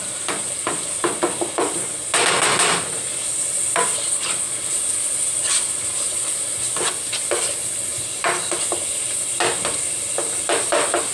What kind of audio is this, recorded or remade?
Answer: recorded